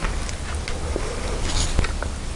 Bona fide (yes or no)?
yes